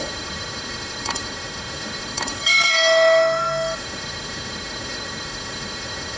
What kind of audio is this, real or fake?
fake